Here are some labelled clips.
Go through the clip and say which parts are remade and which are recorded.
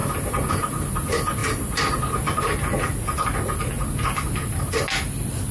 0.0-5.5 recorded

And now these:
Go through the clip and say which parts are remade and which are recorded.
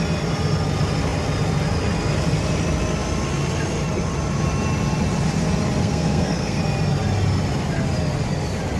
0.0-5.8 recorded; 5.8-6.6 remade; 6.6-8.8 recorded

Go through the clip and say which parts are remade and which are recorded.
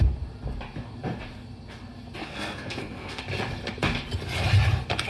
0.0-2.2 recorded; 2.2-3.2 remade; 3.2-5.1 recorded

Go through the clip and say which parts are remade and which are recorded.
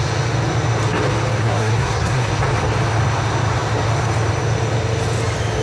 0.0-1.4 recorded; 1.4-2.3 remade; 2.3-5.6 recorded